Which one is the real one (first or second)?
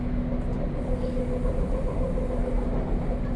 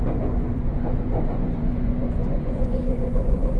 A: first